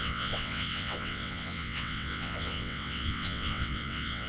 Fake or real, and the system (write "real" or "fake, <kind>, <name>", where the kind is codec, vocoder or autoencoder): fake, vocoder, WaveNeXt